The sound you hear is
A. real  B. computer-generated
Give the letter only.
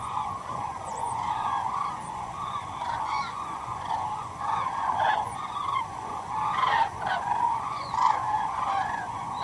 B